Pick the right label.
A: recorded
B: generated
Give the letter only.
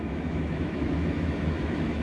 B